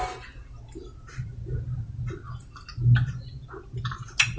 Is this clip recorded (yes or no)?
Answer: yes